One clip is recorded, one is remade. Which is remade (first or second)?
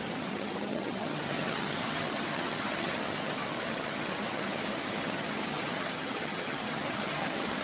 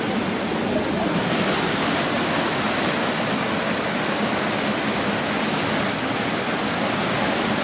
first